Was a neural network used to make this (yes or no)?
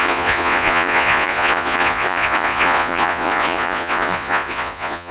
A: yes